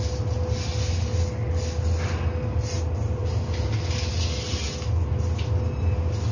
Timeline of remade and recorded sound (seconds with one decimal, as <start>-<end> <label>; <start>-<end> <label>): 0.0-6.3 recorded